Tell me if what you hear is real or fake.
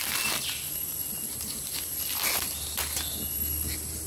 real